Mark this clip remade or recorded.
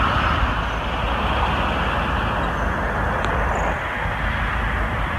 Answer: recorded